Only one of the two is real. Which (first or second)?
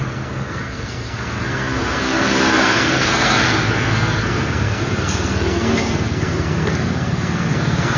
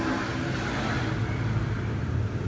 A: second